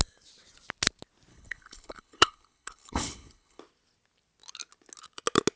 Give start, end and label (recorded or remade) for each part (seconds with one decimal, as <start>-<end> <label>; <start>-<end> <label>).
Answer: 0.0-1.3 recorded; 1.3-3.6 remade; 3.6-5.6 recorded

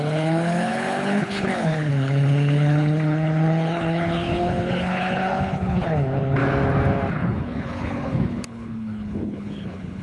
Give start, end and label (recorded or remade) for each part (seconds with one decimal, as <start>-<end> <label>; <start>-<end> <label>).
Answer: 0.0-6.4 remade; 6.4-7.1 recorded; 7.1-10.0 remade

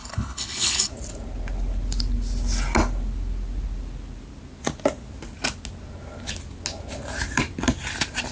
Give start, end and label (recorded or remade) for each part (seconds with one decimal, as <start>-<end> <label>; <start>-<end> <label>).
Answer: 0.0-0.9 remade; 0.9-8.3 recorded

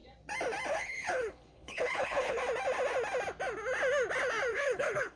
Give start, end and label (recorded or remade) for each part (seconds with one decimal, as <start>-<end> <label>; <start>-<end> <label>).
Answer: 0.0-0.7 recorded; 0.7-2.4 remade; 2.4-4.5 recorded; 4.5-5.2 remade

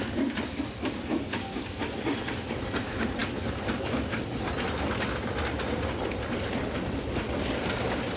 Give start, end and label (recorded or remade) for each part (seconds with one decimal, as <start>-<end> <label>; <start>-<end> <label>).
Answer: 0.0-8.2 recorded

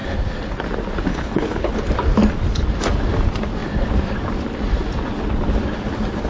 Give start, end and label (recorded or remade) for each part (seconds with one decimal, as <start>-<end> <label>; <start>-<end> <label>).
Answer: 0.0-1.1 recorded; 1.1-1.7 remade; 1.7-6.3 recorded

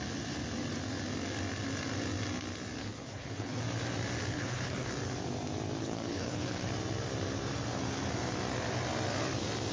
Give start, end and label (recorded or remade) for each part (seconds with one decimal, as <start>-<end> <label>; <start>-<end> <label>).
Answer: 0.0-2.8 recorded; 2.8-3.6 remade; 3.6-4.3 recorded; 4.3-4.9 remade; 4.9-5.8 recorded; 5.8-6.7 remade; 6.7-9.7 recorded

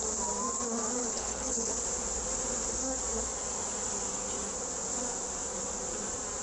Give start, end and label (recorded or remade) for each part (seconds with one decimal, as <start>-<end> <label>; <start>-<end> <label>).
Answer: 0.0-1.0 recorded; 1.0-1.7 remade; 1.7-6.4 recorded